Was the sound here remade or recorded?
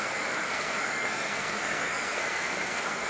remade